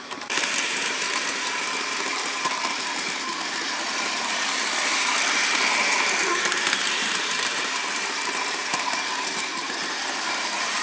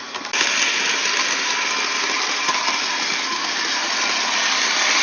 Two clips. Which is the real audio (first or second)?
second